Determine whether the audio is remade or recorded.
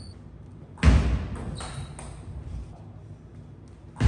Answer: recorded